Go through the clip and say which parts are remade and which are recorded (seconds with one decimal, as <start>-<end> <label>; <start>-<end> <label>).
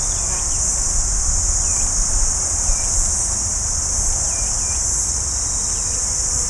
0.0-6.5 recorded